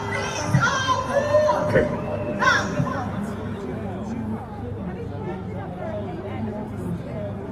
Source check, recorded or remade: recorded